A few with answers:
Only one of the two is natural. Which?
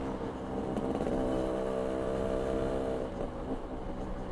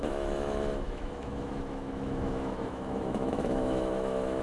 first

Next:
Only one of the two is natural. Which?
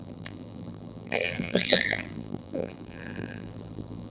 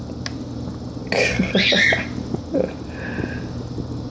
second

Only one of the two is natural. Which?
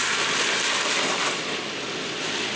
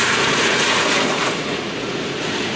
first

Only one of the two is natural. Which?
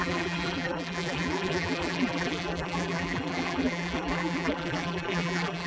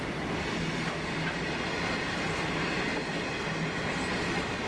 second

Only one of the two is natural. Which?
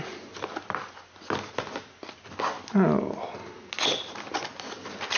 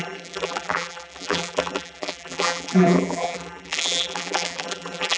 first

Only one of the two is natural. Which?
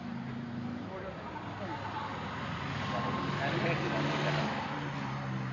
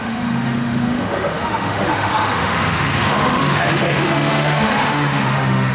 first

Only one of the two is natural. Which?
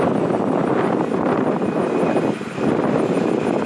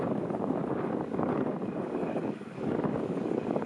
first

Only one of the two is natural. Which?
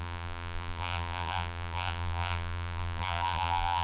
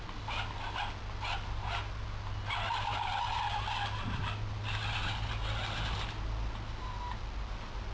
second